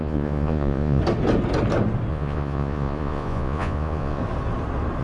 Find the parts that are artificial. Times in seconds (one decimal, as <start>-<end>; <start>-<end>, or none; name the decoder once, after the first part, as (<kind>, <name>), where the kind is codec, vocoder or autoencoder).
0.0-1.0 (vocoder, Vocos); 2.1-4.2